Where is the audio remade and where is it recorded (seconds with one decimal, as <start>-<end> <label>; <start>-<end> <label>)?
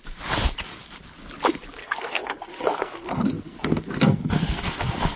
0.0-1.8 recorded; 1.8-5.2 remade